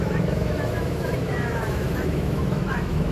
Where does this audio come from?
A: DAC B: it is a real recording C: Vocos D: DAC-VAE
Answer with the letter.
D